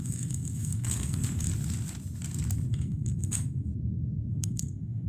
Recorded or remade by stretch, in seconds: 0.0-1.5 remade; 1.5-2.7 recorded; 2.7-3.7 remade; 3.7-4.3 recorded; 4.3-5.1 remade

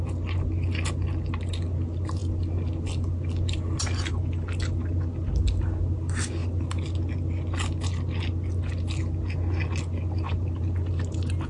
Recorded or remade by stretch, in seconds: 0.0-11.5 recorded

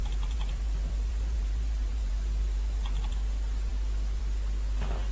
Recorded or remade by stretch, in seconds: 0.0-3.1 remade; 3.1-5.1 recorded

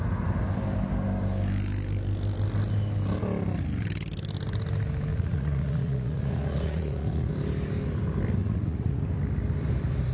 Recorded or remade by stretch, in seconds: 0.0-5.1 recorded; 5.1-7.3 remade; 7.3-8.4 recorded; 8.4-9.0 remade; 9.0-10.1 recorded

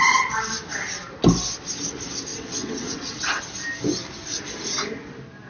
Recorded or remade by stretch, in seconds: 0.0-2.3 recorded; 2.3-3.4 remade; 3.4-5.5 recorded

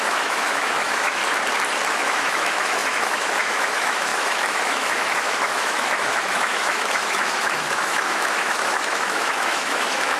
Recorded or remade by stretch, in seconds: 0.0-1.2 remade; 1.2-1.9 recorded; 1.9-10.2 remade

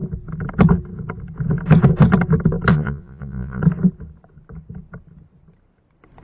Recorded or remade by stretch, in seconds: 0.0-2.7 recorded; 2.7-3.6 remade; 3.6-6.2 recorded